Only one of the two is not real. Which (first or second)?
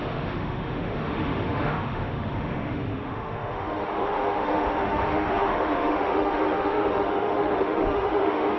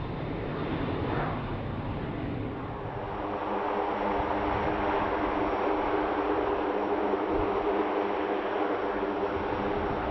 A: first